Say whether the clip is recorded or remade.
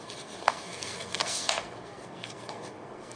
remade